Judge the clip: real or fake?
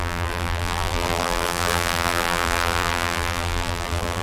fake